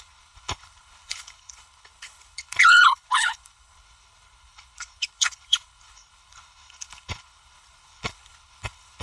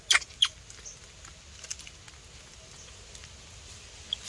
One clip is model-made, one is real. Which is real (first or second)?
second